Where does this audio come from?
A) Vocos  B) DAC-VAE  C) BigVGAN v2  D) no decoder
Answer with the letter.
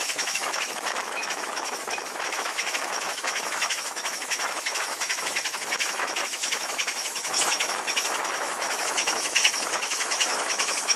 B